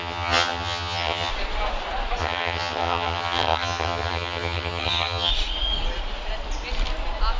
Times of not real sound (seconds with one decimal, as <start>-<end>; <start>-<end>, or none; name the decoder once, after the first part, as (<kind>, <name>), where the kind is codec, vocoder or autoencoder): 0.0-1.3 (vocoder, HiFi-GAN); 2.2-5.3